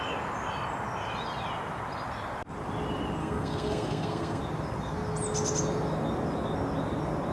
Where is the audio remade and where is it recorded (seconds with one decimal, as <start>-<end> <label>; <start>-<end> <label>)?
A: 0.0-3.2 recorded; 3.2-4.4 remade; 4.4-7.3 recorded